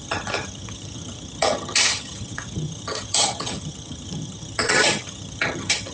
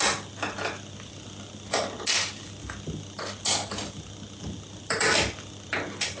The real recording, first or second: second